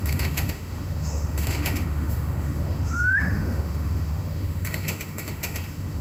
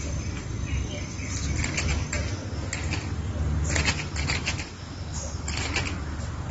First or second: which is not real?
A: first